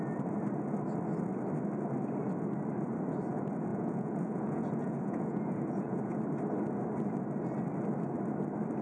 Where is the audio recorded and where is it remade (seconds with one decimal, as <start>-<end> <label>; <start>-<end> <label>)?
0.0-3.7 recorded; 3.7-6.2 remade; 6.2-8.8 recorded